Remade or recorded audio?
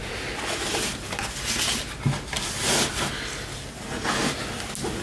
recorded